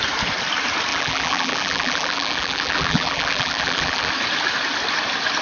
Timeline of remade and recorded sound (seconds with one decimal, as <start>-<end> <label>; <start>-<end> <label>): 0.0-0.9 recorded; 0.9-4.1 remade; 4.1-5.4 recorded